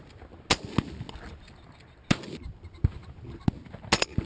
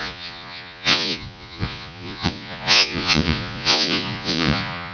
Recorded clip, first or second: first